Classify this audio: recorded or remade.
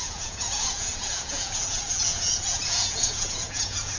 remade